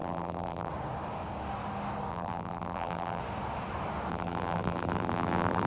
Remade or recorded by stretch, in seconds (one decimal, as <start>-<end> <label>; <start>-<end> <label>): 0.0-0.7 remade; 0.7-2.1 recorded; 2.1-3.2 remade; 3.2-4.1 recorded; 4.1-5.7 remade